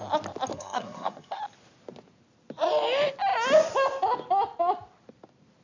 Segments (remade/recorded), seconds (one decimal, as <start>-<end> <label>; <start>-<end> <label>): 0.0-0.5 recorded; 0.5-1.4 remade; 1.4-5.6 recorded